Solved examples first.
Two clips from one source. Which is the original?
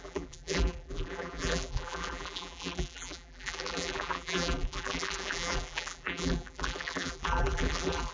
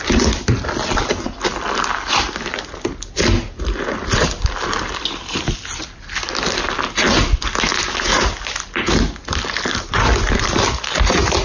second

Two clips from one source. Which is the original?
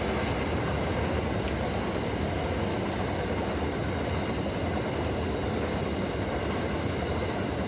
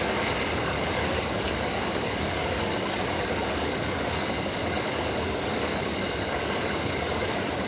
first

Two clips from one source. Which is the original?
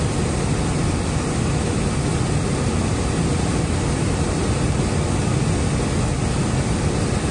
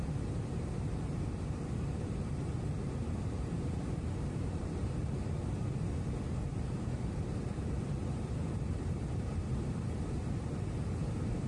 first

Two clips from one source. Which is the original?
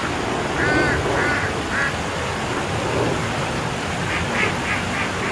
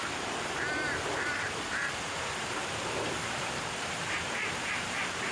first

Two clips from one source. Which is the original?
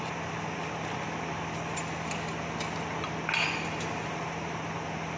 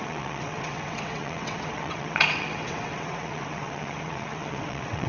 first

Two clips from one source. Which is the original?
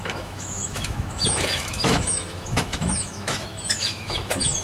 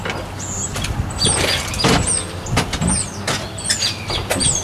second